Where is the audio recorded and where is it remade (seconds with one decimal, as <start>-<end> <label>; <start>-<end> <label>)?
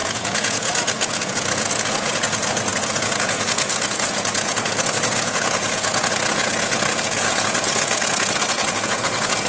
0.0-9.5 remade